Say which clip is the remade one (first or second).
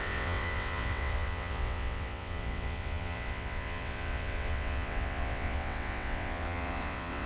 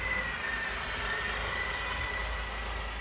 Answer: first